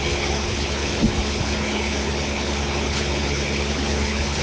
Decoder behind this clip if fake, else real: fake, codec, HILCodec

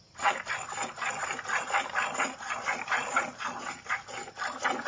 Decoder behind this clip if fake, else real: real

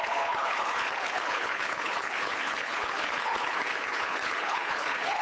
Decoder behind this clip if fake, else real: fake, codec, HILCodec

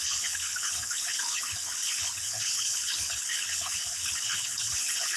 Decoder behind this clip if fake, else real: fake, codec, HILCodec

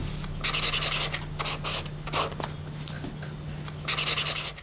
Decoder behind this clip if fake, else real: real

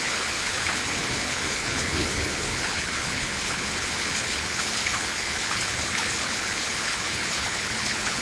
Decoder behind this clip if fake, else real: fake, codec, HILCodec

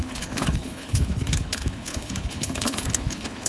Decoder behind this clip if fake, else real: fake, codec, HILCodec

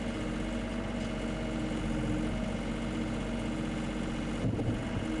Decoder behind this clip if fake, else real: real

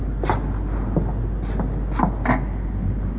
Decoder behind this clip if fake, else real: real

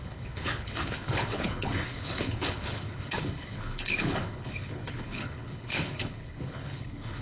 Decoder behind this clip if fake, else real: fake, codec, HILCodec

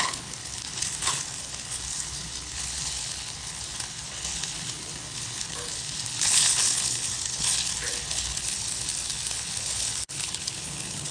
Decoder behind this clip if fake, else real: fake, codec, HILCodec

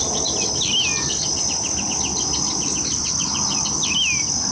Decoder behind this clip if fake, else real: real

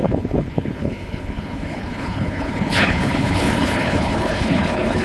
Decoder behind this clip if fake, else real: fake, codec, HILCodec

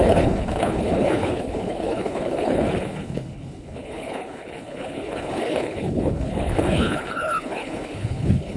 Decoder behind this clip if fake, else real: fake, codec, HILCodec